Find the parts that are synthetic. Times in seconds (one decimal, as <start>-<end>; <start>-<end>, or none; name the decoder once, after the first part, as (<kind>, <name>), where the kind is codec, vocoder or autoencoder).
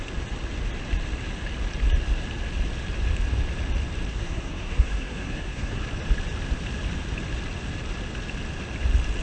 4.1-5.8 (codec, SNAC)